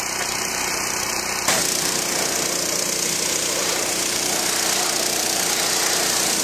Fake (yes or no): yes